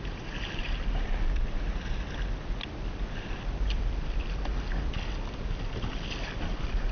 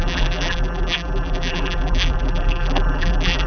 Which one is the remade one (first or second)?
second